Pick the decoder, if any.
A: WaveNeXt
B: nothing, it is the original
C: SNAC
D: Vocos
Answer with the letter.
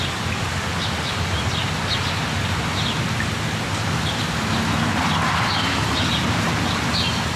B